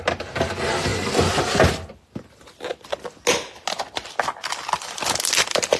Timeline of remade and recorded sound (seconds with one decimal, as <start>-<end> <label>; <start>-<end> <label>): 0.0-5.8 recorded